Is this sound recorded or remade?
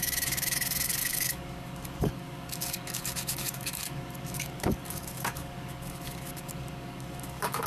remade